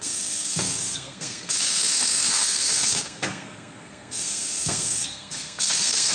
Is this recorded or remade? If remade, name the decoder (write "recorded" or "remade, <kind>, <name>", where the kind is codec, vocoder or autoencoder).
remade, codec, SNAC